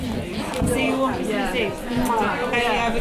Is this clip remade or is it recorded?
recorded